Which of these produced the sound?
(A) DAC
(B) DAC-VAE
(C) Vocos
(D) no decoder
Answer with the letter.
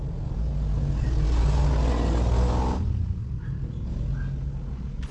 D